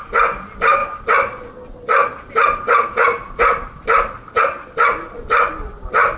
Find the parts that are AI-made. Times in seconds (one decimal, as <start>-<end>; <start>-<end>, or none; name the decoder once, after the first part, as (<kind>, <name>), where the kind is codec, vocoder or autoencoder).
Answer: none